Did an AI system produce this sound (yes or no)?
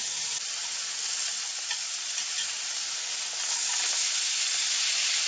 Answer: no